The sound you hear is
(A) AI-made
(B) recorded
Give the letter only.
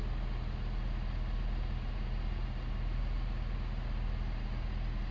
B